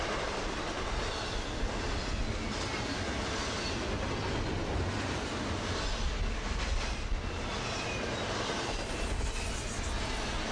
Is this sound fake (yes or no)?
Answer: no